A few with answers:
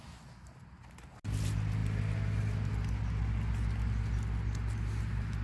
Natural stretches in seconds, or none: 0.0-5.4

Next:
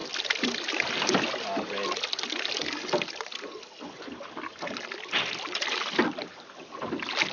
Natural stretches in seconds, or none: 0.0-7.3

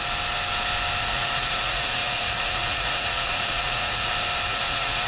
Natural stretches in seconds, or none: 0.0-1.0; 4.1-4.5

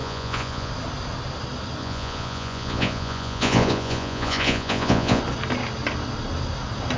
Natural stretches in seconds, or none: 0.7-1.8; 5.2-7.0

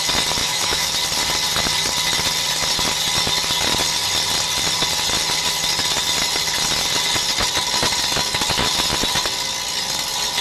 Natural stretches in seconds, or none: 0.0-0.4; 0.9-10.4